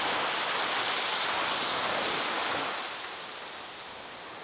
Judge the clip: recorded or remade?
recorded